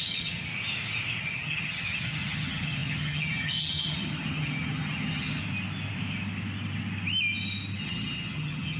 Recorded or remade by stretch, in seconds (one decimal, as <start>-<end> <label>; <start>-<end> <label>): 0.0-0.5 remade; 0.5-1.2 recorded; 1.2-5.4 remade; 5.4-7.8 recorded; 7.8-8.8 remade